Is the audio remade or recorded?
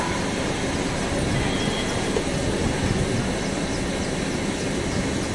recorded